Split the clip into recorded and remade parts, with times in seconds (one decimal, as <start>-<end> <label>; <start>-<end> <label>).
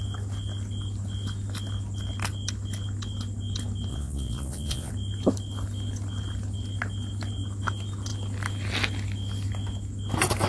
0.0-3.9 recorded; 3.9-4.9 remade; 4.9-10.5 recorded